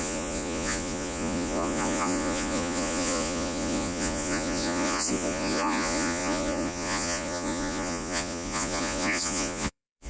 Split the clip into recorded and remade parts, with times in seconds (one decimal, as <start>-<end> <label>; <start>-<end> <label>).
0.0-10.1 remade